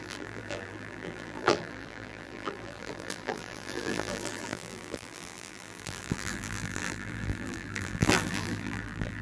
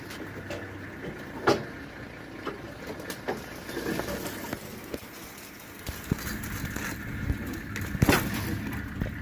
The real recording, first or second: second